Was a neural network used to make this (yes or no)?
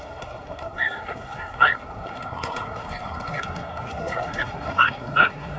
yes